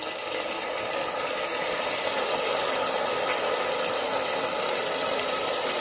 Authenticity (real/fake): real